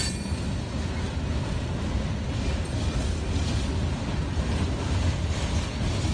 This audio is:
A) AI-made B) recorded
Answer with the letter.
B